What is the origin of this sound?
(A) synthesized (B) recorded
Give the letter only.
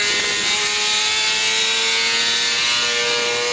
B